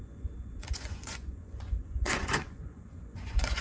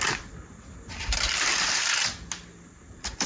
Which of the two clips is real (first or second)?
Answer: second